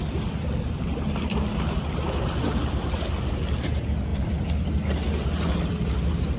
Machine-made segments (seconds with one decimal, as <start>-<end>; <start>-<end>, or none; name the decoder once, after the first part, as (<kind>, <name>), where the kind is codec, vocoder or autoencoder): 4.1-4.7 (vocoder, BigVGAN v2)